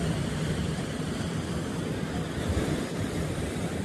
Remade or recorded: recorded